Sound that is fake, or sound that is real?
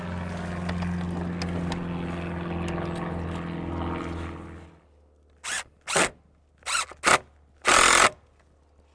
real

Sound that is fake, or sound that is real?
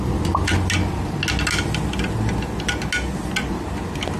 real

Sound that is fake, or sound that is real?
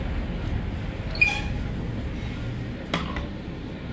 real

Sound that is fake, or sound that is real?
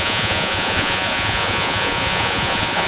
fake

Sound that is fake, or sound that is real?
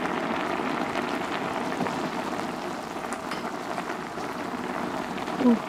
real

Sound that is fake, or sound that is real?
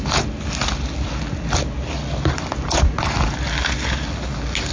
real